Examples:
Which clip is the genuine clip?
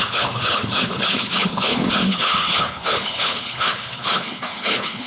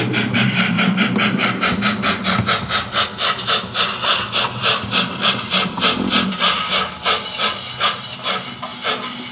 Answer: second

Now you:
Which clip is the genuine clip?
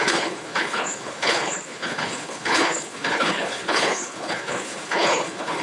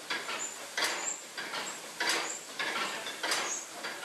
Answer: second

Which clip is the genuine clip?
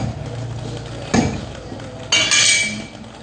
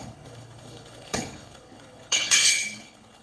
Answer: first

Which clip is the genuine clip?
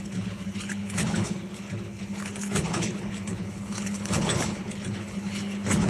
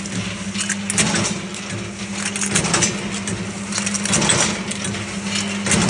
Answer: second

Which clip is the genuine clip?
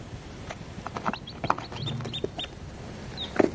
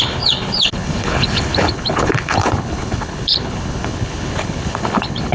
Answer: first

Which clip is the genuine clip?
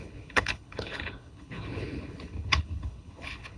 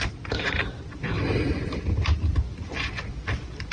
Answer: second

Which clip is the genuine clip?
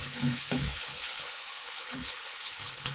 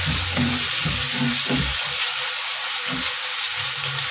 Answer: second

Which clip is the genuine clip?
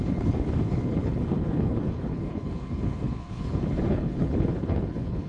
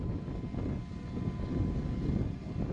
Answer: second